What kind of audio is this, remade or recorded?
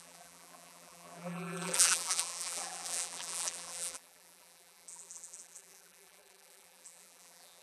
remade